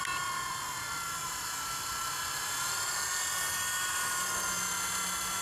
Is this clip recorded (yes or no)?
yes